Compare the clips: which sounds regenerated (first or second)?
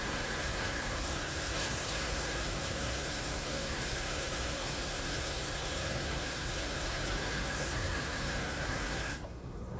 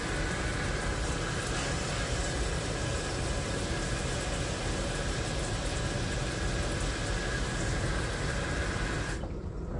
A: first